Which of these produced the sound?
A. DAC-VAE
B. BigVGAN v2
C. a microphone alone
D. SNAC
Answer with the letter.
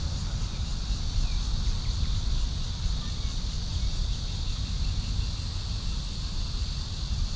C